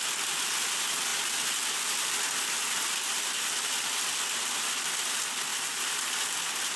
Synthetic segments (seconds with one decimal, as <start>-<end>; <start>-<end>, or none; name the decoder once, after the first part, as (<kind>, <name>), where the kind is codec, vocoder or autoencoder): 5.5-6.1 (vocoder, BigVGAN v2)